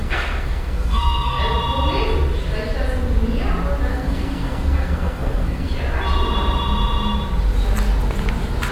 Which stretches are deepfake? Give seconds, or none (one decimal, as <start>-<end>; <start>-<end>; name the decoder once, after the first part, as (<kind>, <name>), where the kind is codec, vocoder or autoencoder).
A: 0.0-1.4 (codec, SNAC); 3.9-5.7